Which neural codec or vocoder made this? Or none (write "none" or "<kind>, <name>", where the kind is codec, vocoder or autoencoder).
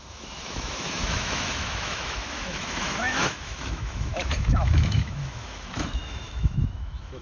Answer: autoencoder, DAC-VAE